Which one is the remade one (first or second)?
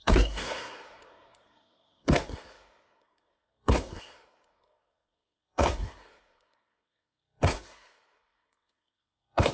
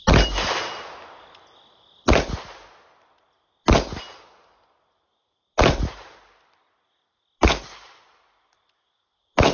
first